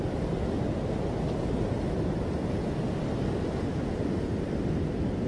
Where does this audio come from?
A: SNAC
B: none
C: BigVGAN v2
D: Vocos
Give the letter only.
B